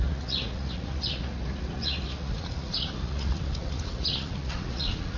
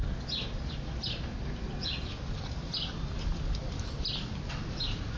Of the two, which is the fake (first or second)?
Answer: first